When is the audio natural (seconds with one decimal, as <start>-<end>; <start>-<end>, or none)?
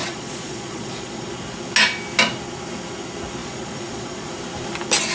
1.3-3.4; 4.3-5.1